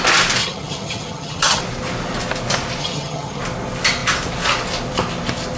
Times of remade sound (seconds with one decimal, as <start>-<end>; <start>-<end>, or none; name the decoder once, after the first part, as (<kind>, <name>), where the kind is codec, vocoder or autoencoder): 0.4-1.6 (vocoder, HiFi-GAN); 2.8-3.4